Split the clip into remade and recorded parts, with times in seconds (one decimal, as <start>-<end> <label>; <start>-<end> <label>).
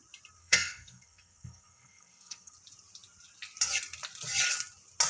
0.0-0.4 recorded; 0.4-2.5 remade; 2.5-5.1 recorded